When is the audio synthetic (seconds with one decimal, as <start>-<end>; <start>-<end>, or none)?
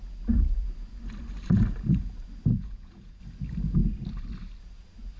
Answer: 2.5-3.2